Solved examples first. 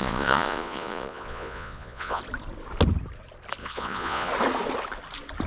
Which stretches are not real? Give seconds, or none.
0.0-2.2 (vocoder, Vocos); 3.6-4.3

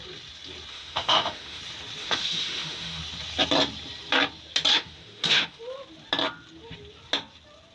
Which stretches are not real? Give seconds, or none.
0.7-1.6 (autoencoder, DAC-VAE); 2.0-3.0; 4.7-5.6